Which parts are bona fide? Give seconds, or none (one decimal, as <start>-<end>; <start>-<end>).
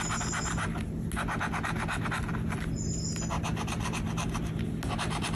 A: 0.0-5.4